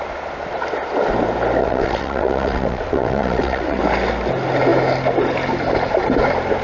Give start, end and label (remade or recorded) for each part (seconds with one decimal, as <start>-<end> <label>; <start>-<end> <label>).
0.0-1.6 recorded; 1.6-3.8 remade; 3.8-6.6 recorded